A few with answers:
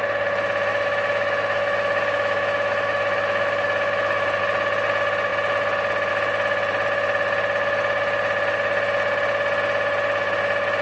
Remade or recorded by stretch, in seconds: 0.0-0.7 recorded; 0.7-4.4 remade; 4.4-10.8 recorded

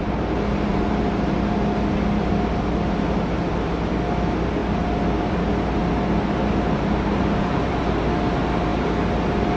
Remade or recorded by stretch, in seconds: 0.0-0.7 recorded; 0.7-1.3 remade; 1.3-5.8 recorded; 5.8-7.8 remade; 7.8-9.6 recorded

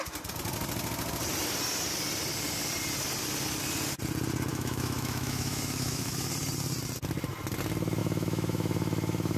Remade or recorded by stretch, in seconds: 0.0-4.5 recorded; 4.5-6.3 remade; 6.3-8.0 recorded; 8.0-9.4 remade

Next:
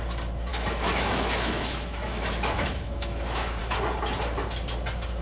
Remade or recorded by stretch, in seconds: 0.0-0.5 recorded; 0.5-3.6 remade; 3.6-5.2 recorded

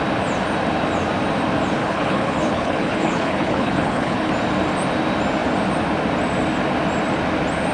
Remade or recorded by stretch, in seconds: 0.0-1.8 recorded; 1.8-4.3 remade; 4.3-7.7 recorded

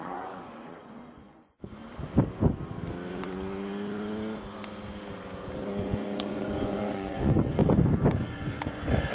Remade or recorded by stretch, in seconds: 0.0-1.8 remade; 1.8-5.8 recorded; 5.8-7.6 remade; 7.6-8.1 recorded; 8.1-9.1 remade